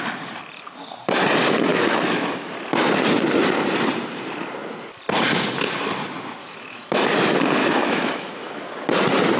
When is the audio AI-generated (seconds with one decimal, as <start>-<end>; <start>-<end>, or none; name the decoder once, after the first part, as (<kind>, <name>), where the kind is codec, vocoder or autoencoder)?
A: 1.7-2.3 (autoencoder, DAC-VAE); 6.4-7.0; 7.6-8.5